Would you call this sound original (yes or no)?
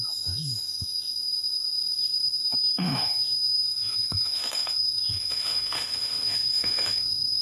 no